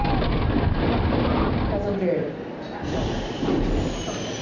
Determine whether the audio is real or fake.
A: real